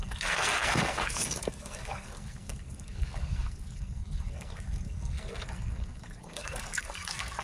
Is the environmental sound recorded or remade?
remade